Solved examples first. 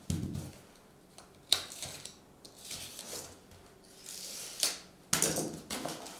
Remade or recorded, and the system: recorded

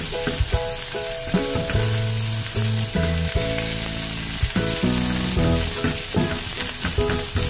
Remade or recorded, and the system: recorded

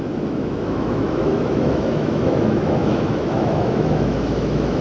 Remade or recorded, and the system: remade, autoencoder, DAC-VAE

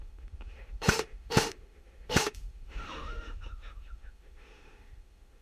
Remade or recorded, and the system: remade, autoencoder, DAC-VAE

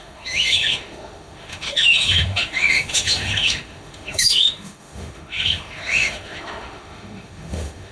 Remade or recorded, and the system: remade, autoencoder, DAC-VAE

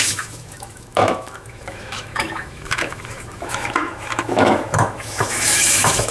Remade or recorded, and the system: remade, autoencoder, DAC-VAE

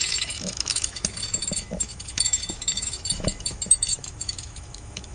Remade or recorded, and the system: remade, autoencoder, DAC-VAE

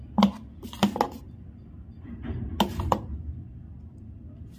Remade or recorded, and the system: recorded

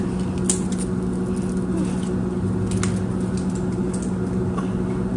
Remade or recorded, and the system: recorded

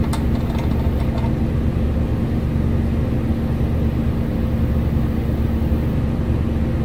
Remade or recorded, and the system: recorded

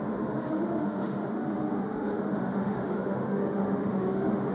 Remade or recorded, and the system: remade, autoencoder, DAC-VAE